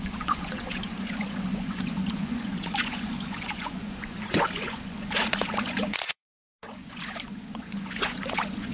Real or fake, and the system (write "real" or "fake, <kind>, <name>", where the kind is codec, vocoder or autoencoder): fake, vocoder, Vocos